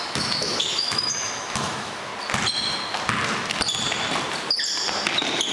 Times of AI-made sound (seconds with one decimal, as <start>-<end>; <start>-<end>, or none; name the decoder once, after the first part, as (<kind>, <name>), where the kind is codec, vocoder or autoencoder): 0.0-2.1 (autoencoder, DAC-VAE)